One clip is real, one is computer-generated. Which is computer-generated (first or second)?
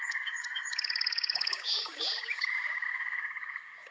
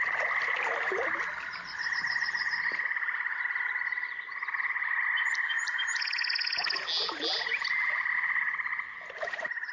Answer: first